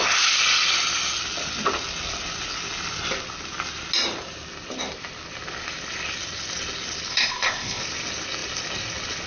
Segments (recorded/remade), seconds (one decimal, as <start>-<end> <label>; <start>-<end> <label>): 0.0-7.1 recorded; 7.1-7.8 remade; 7.8-9.3 recorded